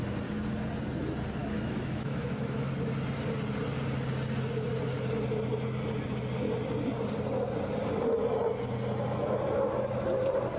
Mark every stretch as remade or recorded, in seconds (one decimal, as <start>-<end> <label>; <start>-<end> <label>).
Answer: 0.0-1.4 recorded; 1.4-2.7 remade; 2.7-10.6 recorded